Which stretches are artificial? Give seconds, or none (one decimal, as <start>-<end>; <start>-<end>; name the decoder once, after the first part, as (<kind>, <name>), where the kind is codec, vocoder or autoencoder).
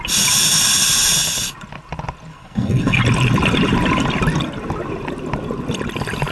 2.3-3.0 (codec, SNAC)